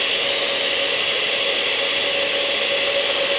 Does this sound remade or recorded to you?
recorded